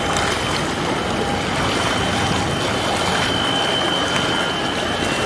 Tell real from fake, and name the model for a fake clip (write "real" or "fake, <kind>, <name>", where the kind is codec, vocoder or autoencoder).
real